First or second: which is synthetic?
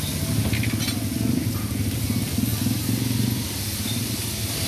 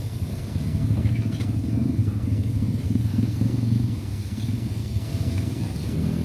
second